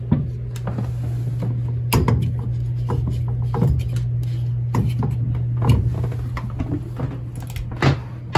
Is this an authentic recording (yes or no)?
yes